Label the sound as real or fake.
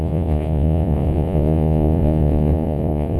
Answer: fake